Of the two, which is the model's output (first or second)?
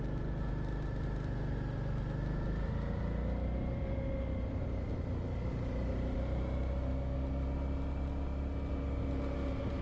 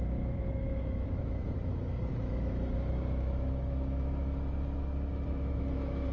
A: second